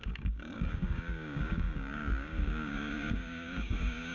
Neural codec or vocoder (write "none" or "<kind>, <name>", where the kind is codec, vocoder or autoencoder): codec, DAC